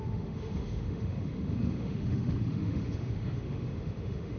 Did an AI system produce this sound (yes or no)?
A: yes